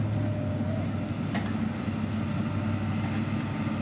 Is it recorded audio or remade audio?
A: recorded